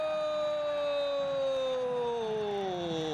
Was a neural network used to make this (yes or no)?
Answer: no